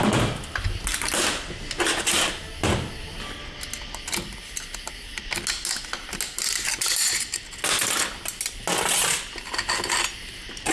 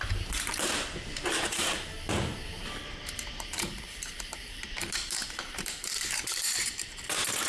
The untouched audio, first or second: first